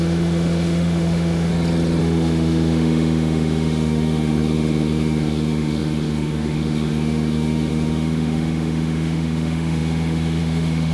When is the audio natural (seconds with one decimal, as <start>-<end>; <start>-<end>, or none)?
1.5-2.0